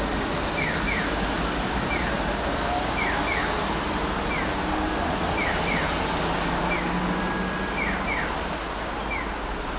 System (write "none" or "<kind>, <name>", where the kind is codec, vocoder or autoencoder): none